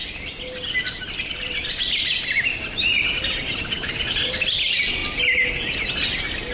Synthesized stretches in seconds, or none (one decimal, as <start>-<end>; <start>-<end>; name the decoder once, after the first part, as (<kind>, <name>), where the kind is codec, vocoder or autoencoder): 0.0-3.9 (vocoder, BigVGAN v2)

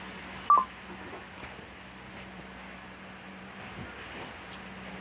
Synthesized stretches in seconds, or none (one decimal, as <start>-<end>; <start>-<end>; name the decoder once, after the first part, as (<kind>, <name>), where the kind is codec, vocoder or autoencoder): none

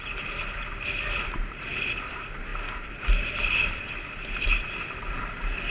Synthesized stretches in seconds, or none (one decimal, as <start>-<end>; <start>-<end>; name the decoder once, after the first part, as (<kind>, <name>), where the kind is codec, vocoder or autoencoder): 2.5-5.7 (vocoder, BigVGAN v2)